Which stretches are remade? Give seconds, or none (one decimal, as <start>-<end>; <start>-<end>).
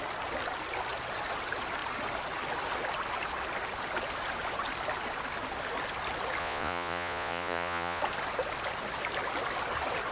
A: 6.4-8.0